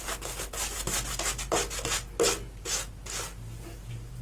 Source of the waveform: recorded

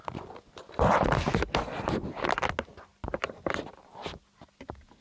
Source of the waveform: recorded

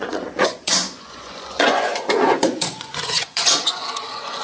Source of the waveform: remade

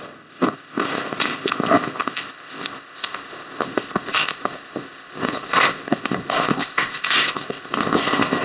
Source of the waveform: remade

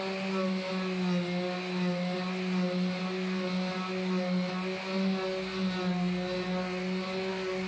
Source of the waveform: recorded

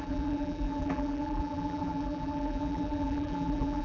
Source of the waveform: remade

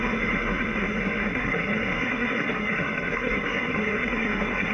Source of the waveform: remade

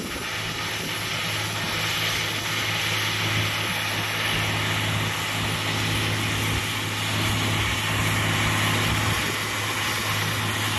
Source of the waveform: recorded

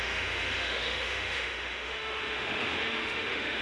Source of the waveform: remade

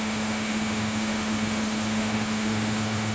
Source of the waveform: remade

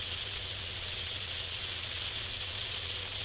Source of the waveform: remade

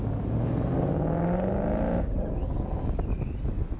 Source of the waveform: recorded